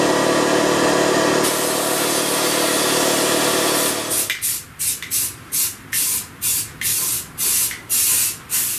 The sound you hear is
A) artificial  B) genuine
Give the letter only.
B